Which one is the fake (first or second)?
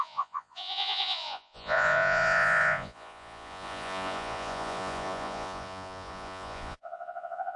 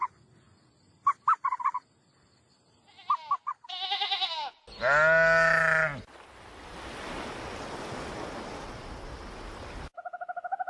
first